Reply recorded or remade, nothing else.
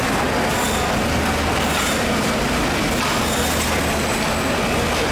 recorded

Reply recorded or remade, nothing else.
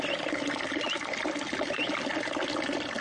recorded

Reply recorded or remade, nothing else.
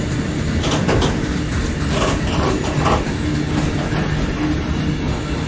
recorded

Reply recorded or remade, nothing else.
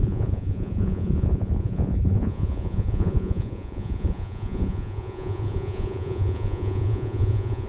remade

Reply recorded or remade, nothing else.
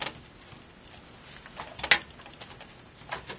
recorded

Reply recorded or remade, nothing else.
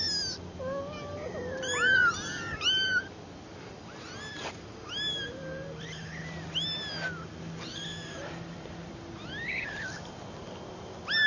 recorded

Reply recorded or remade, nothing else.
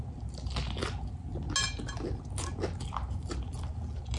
recorded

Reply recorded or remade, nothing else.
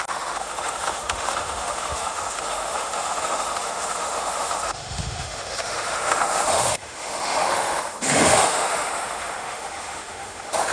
remade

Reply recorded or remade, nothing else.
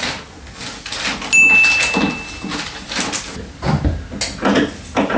recorded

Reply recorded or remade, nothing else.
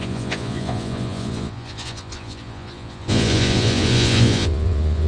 remade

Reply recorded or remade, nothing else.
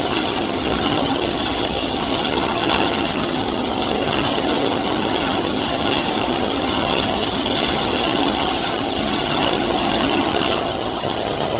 remade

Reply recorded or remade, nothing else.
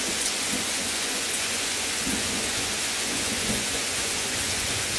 remade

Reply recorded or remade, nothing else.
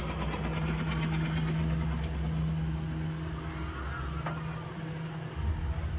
recorded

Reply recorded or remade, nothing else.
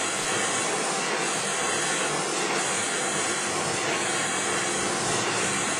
recorded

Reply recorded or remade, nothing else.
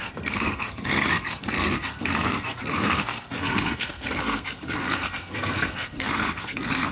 remade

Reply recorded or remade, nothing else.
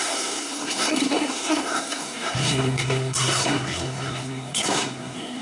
remade